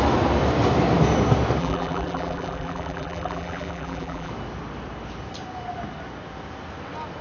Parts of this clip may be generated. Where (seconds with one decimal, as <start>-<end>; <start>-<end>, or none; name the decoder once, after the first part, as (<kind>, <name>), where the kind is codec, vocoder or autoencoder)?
1.6-4.3 (vocoder, BigVGAN v2)